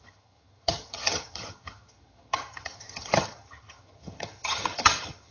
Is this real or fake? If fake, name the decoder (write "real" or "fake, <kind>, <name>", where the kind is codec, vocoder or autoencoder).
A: fake, vocoder, HiFi-GAN